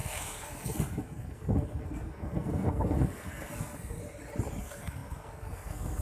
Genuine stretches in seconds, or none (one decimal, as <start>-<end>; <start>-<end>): 4.0-4.6